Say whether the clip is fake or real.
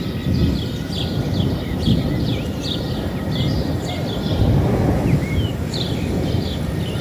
real